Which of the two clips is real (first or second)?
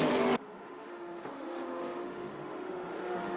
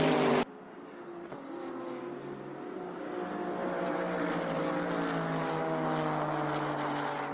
second